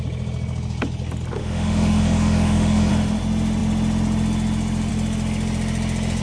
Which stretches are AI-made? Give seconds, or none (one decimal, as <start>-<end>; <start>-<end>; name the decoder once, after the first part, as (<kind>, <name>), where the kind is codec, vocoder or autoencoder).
1.4-2.9 (autoencoder, DAC-VAE)